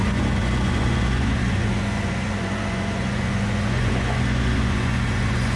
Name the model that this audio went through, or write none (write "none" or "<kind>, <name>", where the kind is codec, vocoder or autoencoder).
vocoder, Vocos